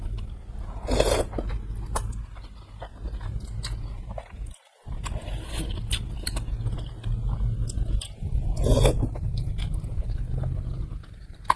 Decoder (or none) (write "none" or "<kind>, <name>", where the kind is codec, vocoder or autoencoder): none